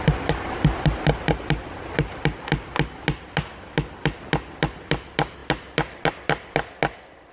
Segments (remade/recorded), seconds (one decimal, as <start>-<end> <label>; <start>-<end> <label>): 0.0-7.3 recorded